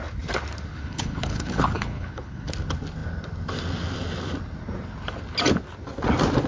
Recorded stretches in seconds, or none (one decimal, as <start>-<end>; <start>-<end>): 0.0-0.7; 2.5-6.5